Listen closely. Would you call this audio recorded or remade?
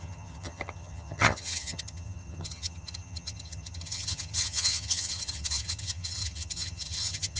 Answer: remade